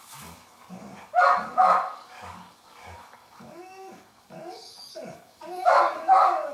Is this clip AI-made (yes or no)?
yes